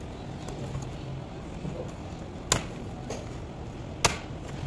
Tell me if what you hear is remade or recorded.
recorded